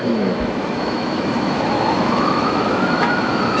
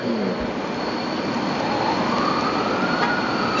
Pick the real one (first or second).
second